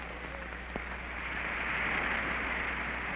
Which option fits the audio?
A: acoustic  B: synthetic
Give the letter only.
A